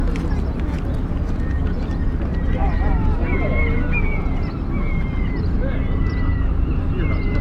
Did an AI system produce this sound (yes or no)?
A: no